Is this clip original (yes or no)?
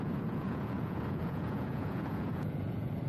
no